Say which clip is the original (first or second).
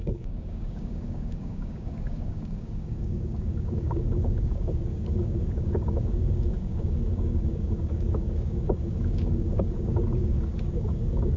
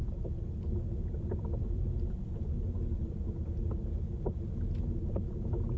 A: second